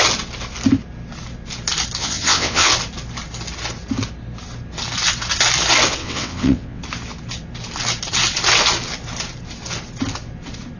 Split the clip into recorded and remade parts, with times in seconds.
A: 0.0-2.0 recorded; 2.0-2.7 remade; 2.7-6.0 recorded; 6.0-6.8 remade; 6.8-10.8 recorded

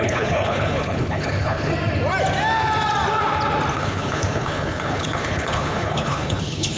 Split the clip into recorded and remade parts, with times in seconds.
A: 0.0-1.7 remade; 1.7-3.7 recorded; 3.7-6.8 remade